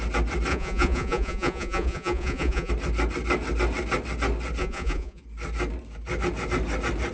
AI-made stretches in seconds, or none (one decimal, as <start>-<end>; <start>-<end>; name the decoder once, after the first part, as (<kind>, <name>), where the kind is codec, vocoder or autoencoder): 0.5-2.7 (vocoder, Vocos); 4.6-5.2